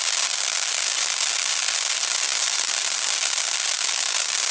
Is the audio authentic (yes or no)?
yes